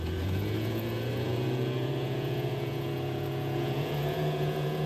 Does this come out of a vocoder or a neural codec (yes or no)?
yes